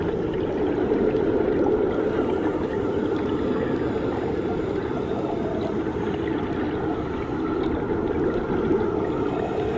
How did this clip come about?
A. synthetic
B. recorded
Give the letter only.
B